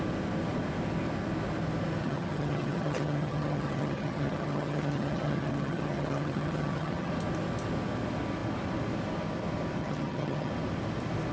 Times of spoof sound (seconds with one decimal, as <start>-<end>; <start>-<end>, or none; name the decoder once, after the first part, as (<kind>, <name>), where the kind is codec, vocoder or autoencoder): 2.0-7.1 (vocoder, HiFi-GAN); 9.8-10.5